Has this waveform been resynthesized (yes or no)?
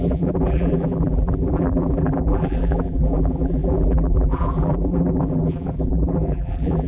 yes